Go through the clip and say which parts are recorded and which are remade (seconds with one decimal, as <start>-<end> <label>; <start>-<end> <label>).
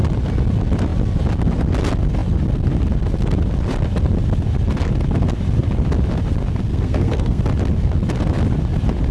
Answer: 0.0-6.7 recorded; 6.7-7.4 remade; 7.4-9.1 recorded